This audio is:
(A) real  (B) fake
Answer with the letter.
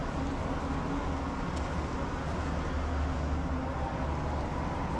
A